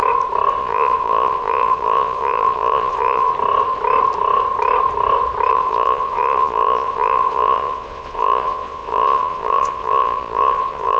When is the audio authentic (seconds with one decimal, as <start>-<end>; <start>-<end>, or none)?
0.0-0.6; 3.3-5.5

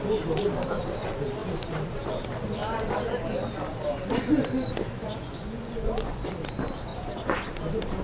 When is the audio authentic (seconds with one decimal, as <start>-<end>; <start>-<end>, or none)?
0.0-5.0; 6.3-6.9; 7.5-8.0

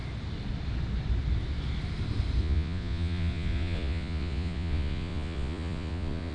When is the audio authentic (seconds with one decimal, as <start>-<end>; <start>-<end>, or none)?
0.0-2.4

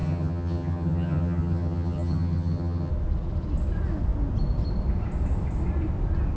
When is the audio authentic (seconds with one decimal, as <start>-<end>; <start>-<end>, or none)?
2.9-6.4